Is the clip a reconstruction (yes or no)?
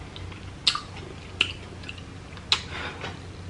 no